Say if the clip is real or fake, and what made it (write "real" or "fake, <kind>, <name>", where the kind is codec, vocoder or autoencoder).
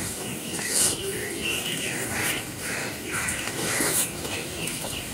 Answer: fake, codec, DAC